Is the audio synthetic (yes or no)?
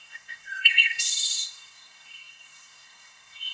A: yes